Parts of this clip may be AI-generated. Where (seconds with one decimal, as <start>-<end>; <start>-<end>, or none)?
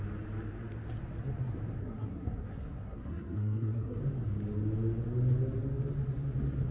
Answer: 1.8-4.0